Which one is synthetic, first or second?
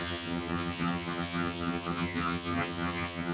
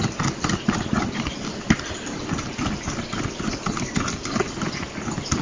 first